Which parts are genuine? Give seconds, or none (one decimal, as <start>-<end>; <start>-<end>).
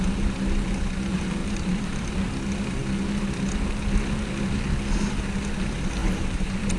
0.0-1.4; 2.1-6.0